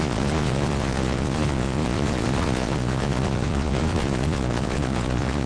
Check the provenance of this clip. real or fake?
fake